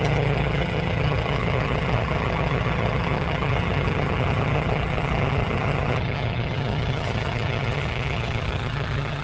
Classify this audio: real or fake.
fake